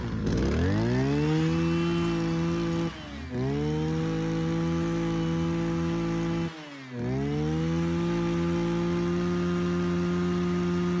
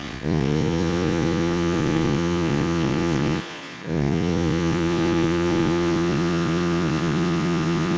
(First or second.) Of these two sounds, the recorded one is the first